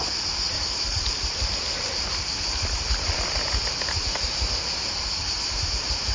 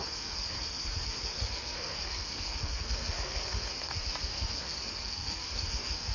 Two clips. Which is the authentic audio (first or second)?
first